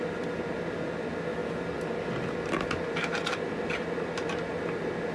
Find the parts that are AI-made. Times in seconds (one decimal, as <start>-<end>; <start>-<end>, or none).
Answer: none